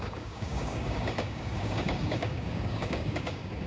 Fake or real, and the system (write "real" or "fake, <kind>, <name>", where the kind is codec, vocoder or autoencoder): fake, codec, DAC